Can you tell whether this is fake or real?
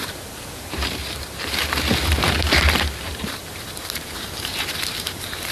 fake